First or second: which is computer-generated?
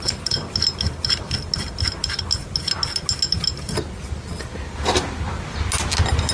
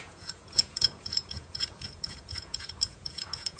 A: second